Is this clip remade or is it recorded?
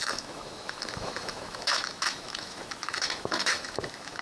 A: remade